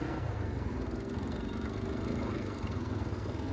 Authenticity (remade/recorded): remade